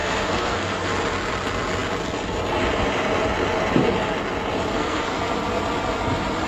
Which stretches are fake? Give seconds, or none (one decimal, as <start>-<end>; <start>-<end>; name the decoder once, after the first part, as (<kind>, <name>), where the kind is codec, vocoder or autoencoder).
0.0-0.9 (codec, SNAC); 4.7-5.2